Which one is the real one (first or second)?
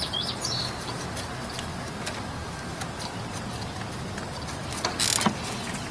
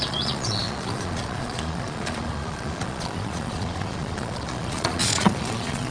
first